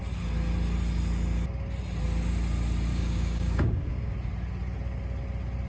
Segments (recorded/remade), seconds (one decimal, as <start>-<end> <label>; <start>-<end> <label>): 0.0-2.9 recorded; 2.9-4.1 remade; 4.1-5.7 recorded